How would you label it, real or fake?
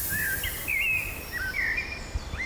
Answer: real